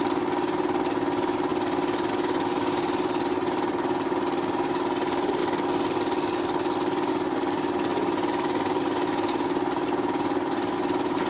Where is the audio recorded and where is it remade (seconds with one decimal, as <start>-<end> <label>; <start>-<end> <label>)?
0.0-1.5 remade; 1.5-2.1 recorded; 2.1-5.4 remade; 5.4-7.1 recorded; 7.1-11.3 remade